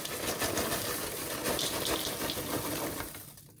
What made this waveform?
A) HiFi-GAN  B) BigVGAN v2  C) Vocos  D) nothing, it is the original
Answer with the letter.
D